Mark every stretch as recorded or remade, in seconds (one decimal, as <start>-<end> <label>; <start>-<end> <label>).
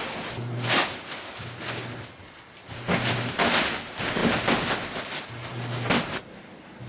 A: 0.0-6.9 recorded